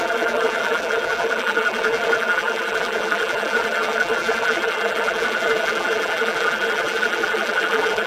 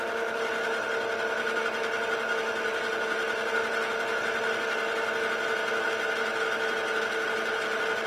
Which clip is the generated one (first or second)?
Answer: first